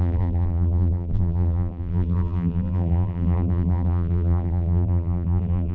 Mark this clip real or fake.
fake